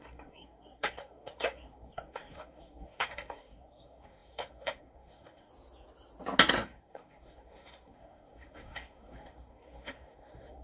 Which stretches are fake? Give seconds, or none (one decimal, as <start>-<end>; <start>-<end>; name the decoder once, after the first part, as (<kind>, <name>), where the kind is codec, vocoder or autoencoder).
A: 0.0-5.5 (codec, SNAC); 6.5-10.6